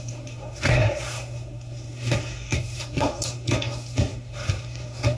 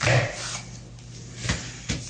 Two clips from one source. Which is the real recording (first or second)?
second